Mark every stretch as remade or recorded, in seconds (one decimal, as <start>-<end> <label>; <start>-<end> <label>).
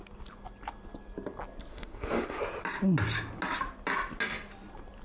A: 0.0-1.7 recorded; 1.7-2.4 remade; 2.4-5.0 recorded